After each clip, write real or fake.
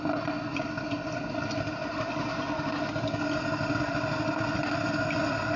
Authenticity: real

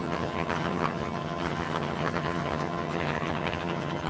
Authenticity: fake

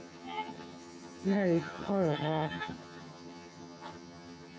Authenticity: fake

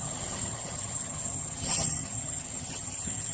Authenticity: fake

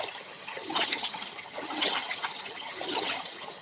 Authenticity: fake